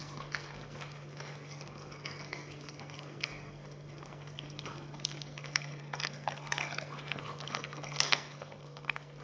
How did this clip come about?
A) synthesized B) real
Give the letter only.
A